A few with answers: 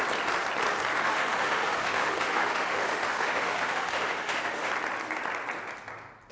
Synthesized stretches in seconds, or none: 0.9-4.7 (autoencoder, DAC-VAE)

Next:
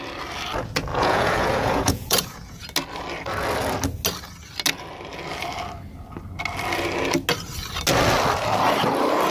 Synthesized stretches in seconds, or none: 0.9-2.6 (vocoder, Vocos)

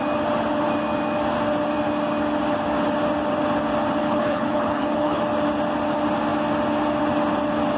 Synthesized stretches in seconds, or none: 4.0-5.2 (codec, HILCodec)

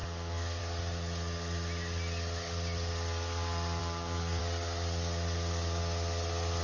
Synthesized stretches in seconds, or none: 0.0-0.6 (codec, DAC); 3.8-4.4

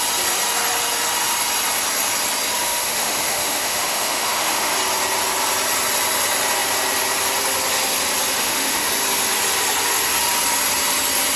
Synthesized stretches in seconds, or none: 2.6-4.7 (autoencoder, DAC-VAE); 8.4-8.9

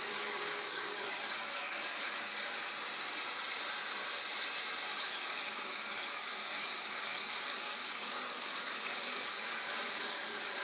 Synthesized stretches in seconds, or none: 0.0-2.3 (codec, DAC); 5.0-10.6

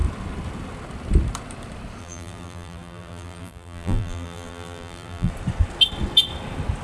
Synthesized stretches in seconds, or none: 2.0-5.3 (vocoder, BigVGAN v2)

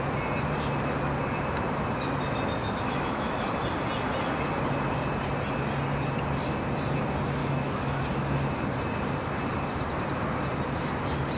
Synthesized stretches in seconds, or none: 2.6-3.4 (autoencoder, DAC-VAE); 7.4-8.0